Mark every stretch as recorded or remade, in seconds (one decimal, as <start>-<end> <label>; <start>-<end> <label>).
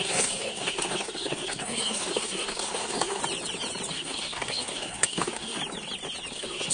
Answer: 0.0-3.2 remade; 3.2-3.9 recorded; 3.9-5.6 remade; 5.6-6.3 recorded; 6.3-6.7 remade